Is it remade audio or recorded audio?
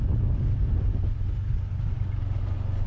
recorded